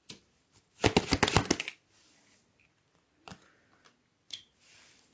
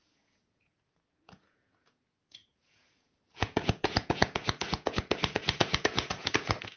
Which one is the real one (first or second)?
first